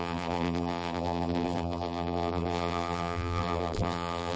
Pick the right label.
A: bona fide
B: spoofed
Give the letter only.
B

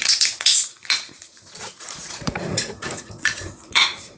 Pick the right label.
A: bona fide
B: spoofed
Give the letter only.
B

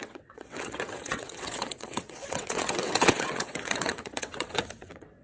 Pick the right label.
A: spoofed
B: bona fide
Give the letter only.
A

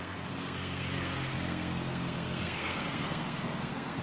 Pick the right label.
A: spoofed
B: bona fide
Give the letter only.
A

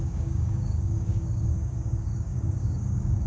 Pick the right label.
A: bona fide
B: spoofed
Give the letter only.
B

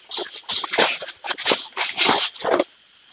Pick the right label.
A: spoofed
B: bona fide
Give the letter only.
B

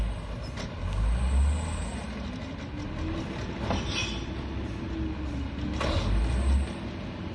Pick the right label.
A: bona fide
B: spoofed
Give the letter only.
A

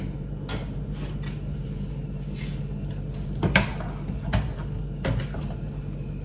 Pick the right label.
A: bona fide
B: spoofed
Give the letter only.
A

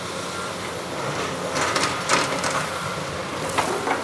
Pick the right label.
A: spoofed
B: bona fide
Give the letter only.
B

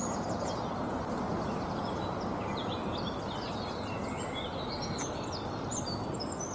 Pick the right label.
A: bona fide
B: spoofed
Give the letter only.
A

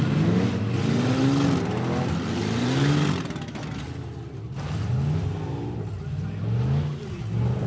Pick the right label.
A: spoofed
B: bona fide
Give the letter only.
B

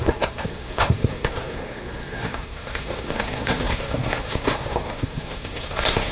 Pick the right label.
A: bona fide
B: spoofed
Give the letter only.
B